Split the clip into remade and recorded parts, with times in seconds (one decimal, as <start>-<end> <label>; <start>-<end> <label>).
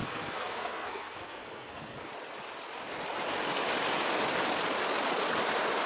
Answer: 0.0-2.1 remade; 2.1-5.9 recorded